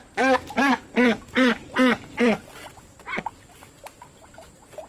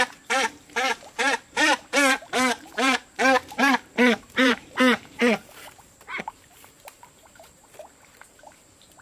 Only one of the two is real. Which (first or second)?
first